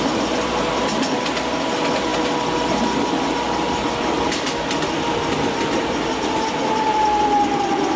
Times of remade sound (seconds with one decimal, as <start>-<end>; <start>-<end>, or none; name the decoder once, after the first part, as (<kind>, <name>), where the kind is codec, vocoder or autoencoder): none

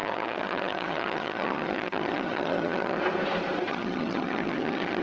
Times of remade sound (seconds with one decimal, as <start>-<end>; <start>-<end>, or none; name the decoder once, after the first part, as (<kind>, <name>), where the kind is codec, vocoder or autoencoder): 0.0-3.0 (vocoder, HiFi-GAN); 3.7-5.0

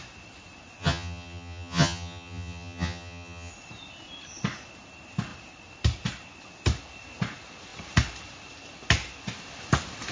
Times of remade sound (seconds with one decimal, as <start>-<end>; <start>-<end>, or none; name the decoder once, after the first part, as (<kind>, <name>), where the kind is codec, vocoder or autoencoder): 0.8-3.5 (vocoder, HiFi-GAN)

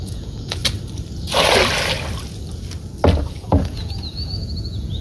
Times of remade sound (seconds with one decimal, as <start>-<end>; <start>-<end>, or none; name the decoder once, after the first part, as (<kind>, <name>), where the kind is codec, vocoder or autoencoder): 0.0-0.6 (vocoder, Vocos); 3.3-5.0